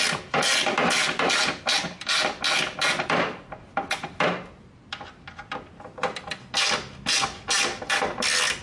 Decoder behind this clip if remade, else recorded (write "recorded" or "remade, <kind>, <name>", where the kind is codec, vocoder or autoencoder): recorded